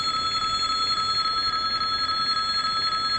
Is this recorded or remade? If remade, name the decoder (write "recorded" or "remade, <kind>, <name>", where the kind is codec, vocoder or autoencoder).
recorded